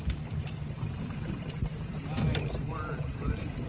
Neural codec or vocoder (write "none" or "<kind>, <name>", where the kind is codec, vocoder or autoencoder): vocoder, BigVGAN v2